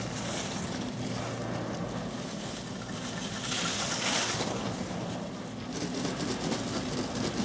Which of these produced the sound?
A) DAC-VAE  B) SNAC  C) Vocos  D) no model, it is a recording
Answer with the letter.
D